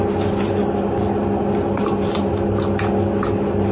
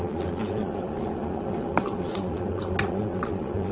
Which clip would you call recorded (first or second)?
first